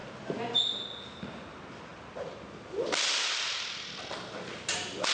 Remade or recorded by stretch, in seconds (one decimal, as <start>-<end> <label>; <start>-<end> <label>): 0.0-5.1 recorded